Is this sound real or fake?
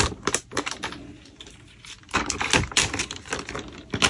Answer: real